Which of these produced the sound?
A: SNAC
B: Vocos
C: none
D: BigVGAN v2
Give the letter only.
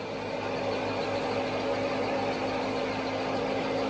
C